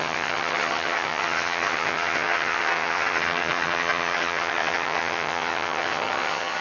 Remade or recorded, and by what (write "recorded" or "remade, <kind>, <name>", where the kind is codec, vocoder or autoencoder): remade, vocoder, HiFi-GAN